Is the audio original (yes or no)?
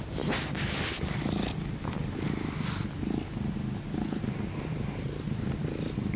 yes